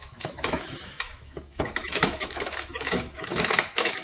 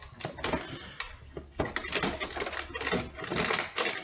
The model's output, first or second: first